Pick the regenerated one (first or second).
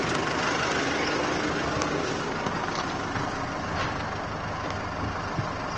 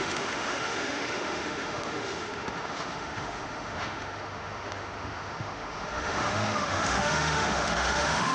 second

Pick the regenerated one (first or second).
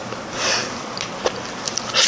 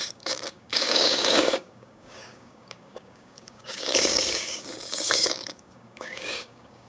second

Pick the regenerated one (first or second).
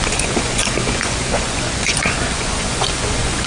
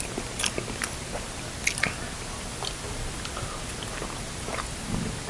first